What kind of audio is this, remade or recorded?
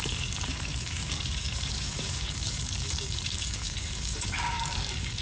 remade